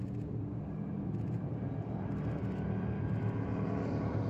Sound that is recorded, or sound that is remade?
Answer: remade